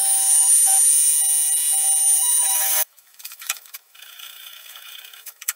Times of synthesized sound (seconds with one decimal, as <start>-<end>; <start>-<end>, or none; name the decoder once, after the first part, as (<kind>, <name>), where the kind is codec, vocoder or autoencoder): 0.0-0.9 (autoencoder, DAC-VAE); 2.0-5.6

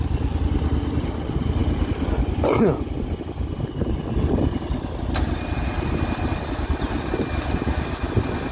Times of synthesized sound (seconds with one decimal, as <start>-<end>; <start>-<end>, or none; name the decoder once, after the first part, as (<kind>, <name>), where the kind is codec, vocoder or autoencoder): none

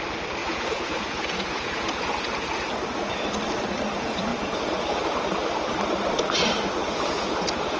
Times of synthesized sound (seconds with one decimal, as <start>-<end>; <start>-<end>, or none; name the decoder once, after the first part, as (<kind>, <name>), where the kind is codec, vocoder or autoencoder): 0.4-2.3 (vocoder, Vocos); 4.3-4.9; 6.8-7.8

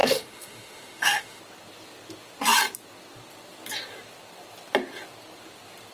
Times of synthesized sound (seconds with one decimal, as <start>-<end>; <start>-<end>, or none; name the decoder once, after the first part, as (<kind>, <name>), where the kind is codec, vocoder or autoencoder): 0.0-1.4 (autoencoder, DAC-VAE)

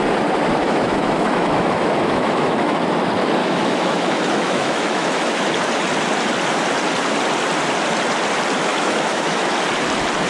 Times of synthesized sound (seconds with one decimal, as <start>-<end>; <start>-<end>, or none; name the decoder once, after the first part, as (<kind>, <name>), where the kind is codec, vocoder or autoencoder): 0.6-2.8 (autoencoder, DAC-VAE); 3.4-5.5; 8.7-9.5

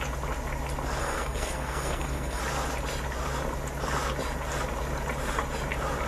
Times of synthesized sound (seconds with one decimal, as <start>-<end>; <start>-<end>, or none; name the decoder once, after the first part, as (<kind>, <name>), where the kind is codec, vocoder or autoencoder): 1.0-2.4 (codec, SNAC)

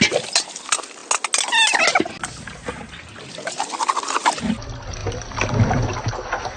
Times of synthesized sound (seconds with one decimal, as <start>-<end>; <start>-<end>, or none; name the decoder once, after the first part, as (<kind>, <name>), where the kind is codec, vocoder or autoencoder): none

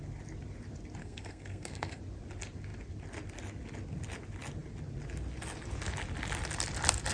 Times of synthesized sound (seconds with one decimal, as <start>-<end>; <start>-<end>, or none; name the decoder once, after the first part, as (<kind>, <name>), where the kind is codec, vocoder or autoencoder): 1.0-2.0 (codec, SNAC)